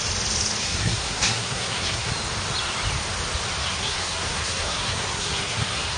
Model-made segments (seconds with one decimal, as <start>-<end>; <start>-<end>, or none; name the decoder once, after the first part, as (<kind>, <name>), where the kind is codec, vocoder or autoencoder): 0.6-2.1 (codec, SNAC); 3.6-6.0